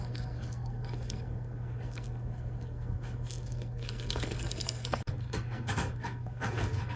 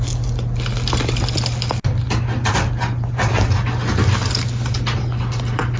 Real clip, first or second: second